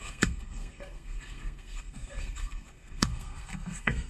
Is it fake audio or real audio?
fake